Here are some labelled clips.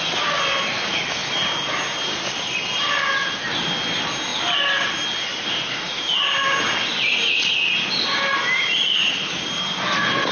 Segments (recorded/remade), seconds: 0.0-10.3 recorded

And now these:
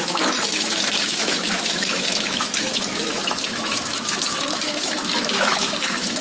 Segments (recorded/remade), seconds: 0.0-6.2 remade

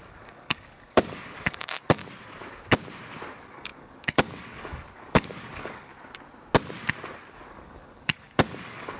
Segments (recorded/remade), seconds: 0.0-2.0 remade; 2.0-3.3 recorded; 3.3-5.9 remade; 5.9-7.3 recorded; 7.3-9.0 remade

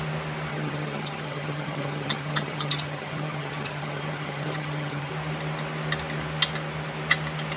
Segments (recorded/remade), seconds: 0.0-0.5 recorded; 0.5-5.1 remade; 5.1-7.6 recorded

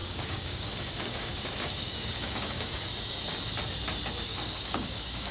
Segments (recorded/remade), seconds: 0.0-3.2 remade; 3.2-4.3 recorded; 4.3-5.3 remade

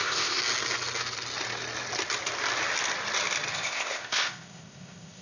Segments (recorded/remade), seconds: 0.0-0.4 remade; 0.4-3.5 recorded; 3.5-5.2 remade

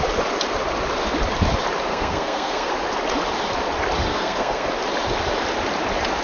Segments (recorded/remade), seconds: 0.0-1.9 recorded; 1.9-2.7 remade; 2.7-4.1 recorded; 4.1-4.7 remade; 4.7-6.2 recorded